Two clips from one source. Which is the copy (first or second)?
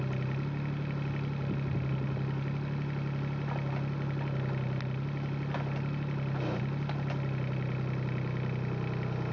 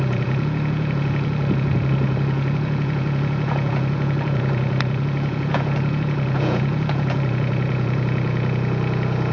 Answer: second